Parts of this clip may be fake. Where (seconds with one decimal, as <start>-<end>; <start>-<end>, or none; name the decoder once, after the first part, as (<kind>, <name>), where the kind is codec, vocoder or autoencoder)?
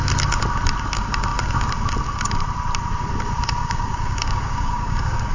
3.6-5.3 (codec, DAC)